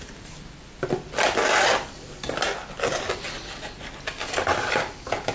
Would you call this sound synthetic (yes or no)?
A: no